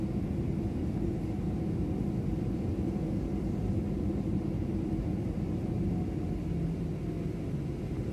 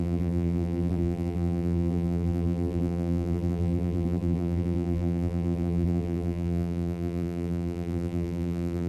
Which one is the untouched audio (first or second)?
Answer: first